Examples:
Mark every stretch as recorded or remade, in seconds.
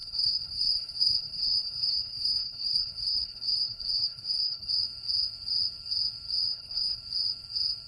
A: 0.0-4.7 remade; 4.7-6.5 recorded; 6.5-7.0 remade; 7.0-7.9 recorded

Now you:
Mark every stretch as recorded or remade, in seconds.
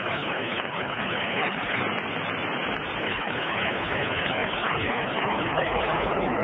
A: 0.0-1.8 remade; 1.8-3.0 recorded; 3.0-6.4 remade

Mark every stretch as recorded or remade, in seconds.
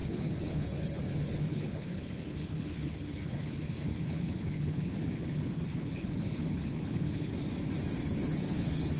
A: 0.0-7.3 remade; 7.3-8.0 recorded; 8.0-9.0 remade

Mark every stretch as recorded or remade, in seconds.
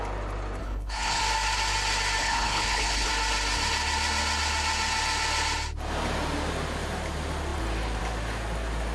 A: 0.0-0.6 recorded; 0.6-1.2 remade; 1.2-2.2 recorded; 2.2-3.1 remade; 3.1-8.9 recorded